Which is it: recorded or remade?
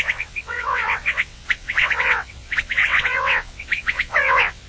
remade